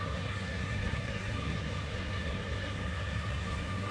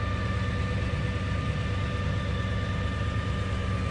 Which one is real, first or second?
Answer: second